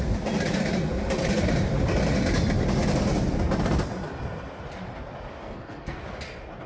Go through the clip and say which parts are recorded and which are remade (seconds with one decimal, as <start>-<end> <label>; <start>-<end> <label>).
0.0-5.4 recorded; 5.4-6.0 remade; 6.0-6.7 recorded